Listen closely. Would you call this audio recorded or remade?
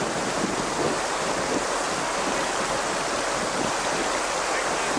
recorded